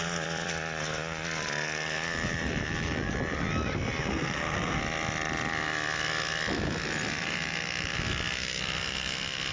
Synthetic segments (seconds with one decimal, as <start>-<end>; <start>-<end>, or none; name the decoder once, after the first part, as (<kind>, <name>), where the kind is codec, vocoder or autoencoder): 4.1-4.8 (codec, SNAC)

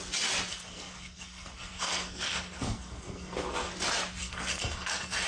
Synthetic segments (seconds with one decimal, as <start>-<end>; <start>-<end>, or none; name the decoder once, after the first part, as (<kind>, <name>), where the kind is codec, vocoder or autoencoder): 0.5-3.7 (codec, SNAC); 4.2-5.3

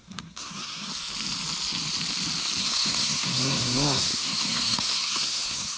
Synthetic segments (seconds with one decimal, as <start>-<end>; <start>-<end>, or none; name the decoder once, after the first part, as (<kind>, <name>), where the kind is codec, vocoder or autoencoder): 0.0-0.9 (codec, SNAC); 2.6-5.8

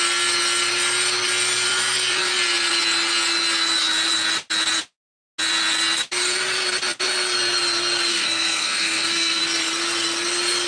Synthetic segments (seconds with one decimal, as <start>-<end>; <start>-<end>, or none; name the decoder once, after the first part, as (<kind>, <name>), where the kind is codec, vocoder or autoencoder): 8.1-9.4 (codec, SNAC)

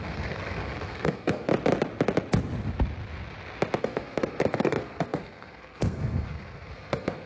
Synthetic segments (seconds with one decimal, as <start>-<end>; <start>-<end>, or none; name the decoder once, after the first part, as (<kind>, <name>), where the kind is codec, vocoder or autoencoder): 0.0-1.5 (codec, SNAC); 3.8-7.3